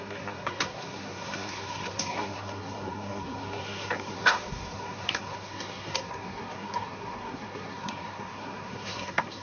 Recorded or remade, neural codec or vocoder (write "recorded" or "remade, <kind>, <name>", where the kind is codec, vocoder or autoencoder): remade, codec, SNAC